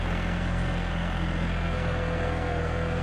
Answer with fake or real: fake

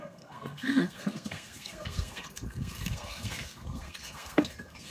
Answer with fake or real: fake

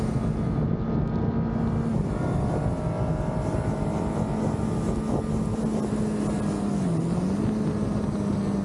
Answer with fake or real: real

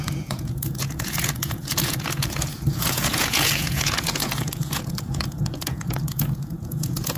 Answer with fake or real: fake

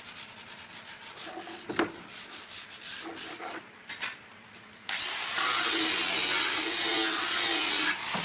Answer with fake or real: real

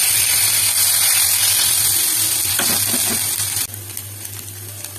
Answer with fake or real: real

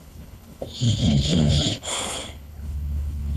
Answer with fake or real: fake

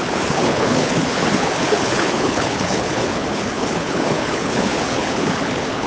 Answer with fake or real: fake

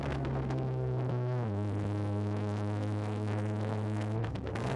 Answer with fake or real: fake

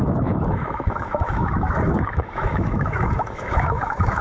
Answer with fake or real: fake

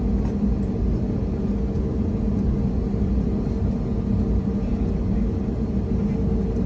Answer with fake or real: real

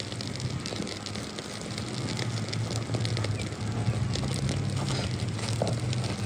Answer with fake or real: real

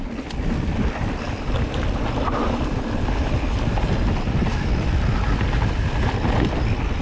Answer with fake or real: real